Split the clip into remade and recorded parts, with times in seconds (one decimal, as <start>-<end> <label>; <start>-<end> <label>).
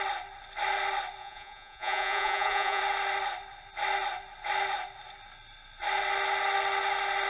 0.0-1.2 recorded; 1.2-2.8 remade; 2.8-7.3 recorded